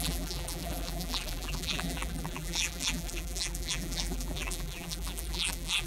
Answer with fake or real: fake